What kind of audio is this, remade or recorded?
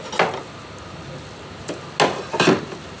recorded